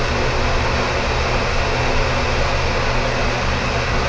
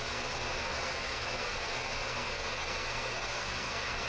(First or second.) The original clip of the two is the first